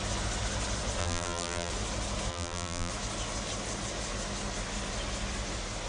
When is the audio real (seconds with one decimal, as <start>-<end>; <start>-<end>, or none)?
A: 0.0-1.0; 1.7-2.3; 2.9-5.9